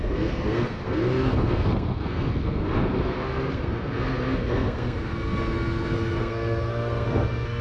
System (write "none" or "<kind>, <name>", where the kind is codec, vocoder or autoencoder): codec, SNAC